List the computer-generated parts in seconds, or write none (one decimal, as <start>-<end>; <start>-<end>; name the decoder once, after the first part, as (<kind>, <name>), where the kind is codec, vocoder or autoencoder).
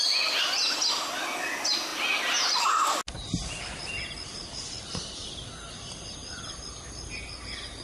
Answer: none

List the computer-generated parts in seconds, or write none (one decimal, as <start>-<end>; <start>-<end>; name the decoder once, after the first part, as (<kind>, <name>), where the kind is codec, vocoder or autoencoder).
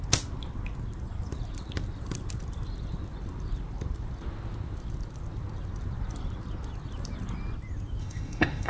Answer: 8.0-8.7 (autoencoder, DAC-VAE)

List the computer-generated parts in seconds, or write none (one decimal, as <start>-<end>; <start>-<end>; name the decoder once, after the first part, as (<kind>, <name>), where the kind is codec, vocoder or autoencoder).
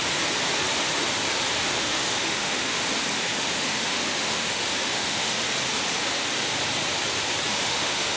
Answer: 1.6-2.9 (autoencoder, DAC-VAE); 3.3-5.4; 7.5-8.2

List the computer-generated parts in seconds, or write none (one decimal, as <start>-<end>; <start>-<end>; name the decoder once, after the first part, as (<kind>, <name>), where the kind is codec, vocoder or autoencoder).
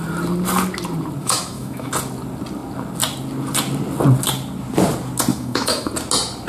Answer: 1.2-1.9 (autoencoder, DAC-VAE); 5.3-5.9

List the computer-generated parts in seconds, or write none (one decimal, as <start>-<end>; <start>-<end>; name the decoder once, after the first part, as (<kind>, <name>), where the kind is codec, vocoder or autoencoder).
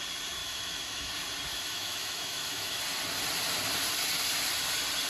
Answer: 0.4-1.1 (autoencoder, DAC-VAE); 1.5-2.8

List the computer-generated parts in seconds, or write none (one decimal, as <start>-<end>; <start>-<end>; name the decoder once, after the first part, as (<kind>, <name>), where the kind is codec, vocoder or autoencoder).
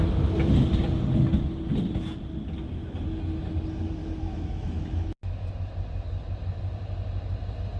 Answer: 4.0-5.5 (autoencoder, DAC-VAE)